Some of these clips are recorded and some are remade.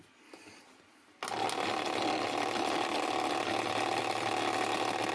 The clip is recorded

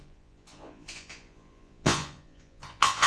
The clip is remade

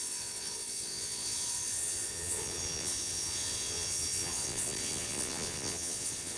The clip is remade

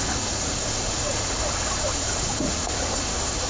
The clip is remade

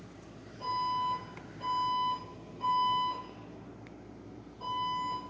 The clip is recorded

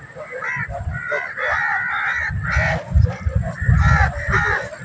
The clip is recorded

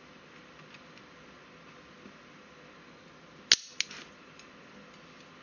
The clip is recorded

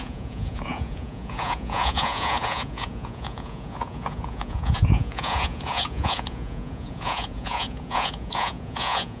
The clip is remade